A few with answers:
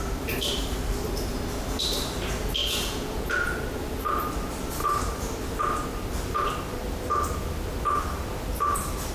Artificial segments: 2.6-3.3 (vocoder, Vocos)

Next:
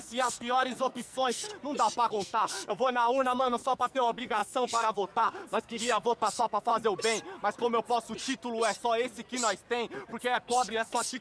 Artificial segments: 0.0-1.5 (codec, SNAC); 2.1-6.7; 10.2-11.2

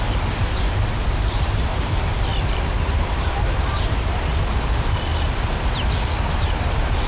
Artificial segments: 0.0-5.1 (vocoder, BigVGAN v2); 6.2-7.1

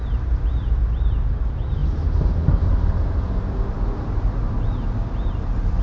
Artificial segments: none

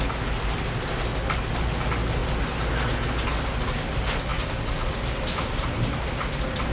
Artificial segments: none

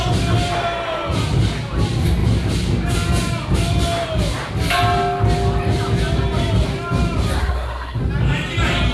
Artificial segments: 7.4-8.0 (codec, SNAC)